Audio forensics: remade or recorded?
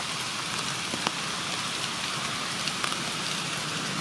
recorded